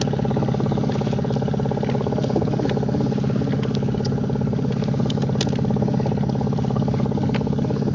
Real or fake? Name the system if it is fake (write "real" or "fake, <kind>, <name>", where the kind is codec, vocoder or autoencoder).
real